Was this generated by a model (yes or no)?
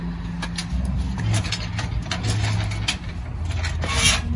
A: no